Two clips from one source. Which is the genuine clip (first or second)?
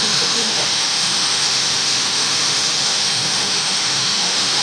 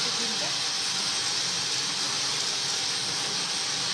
second